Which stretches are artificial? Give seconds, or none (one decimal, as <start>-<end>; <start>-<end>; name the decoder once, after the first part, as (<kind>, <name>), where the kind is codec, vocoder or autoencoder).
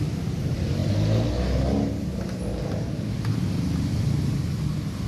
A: 0.0-0.8 (vocoder, BigVGAN v2); 3.9-5.1